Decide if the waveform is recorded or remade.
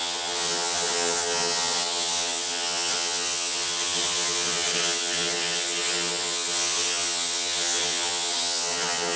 remade